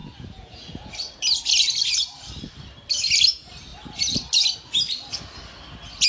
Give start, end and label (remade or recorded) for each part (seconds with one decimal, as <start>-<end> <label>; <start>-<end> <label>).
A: 0.0-0.9 remade; 0.9-6.1 recorded